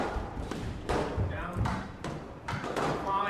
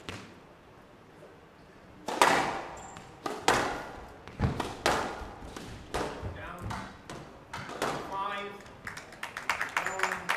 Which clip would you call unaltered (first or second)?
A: second